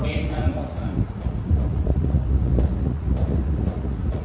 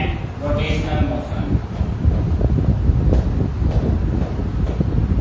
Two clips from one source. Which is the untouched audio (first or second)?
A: second